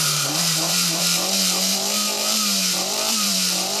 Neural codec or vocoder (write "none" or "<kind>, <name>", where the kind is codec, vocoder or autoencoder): vocoder, BigVGAN v2